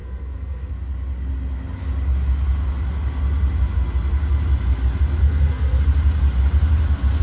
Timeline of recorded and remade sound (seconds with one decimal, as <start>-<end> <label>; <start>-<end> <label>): 0.0-0.7 remade; 0.7-5.2 recorded; 5.2-5.8 remade; 5.8-7.2 recorded